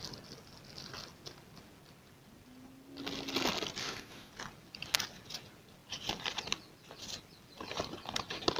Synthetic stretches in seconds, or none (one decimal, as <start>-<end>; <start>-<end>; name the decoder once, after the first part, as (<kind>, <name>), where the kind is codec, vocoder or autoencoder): 3.8-4.3 (autoencoder, DAC-VAE)